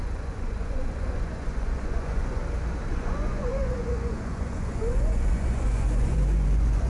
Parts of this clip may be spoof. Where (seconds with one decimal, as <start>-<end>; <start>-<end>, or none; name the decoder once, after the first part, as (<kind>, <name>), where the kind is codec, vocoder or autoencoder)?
0.0-2.4 (vocoder, Vocos); 2.9-6.9